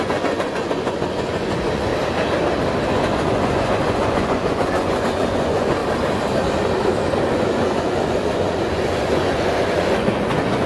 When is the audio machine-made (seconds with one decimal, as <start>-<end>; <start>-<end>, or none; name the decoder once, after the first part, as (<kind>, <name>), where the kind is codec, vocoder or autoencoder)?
0.0-1.9 (vocoder, Vocos); 2.9-5.8; 7.3-10.7